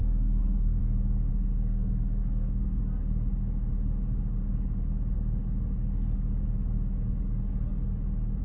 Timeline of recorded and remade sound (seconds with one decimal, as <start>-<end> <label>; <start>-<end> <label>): 0.0-0.8 remade; 0.8-1.3 recorded; 1.3-2.8 remade; 2.8-8.4 recorded